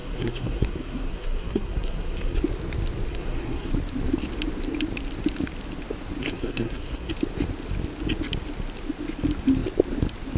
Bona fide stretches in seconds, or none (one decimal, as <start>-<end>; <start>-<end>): 2.4-3.1; 3.7-6.2; 7.1-10.4